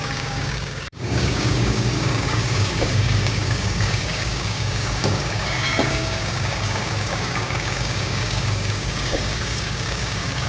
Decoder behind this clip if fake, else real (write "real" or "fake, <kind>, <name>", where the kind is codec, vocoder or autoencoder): fake, codec, DAC